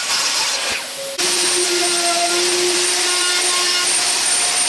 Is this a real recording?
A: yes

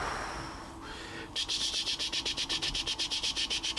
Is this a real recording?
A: yes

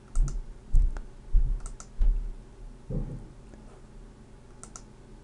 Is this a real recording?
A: yes